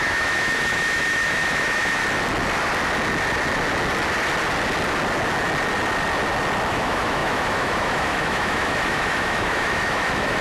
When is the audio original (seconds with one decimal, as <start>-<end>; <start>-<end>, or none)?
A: 2.0-6.7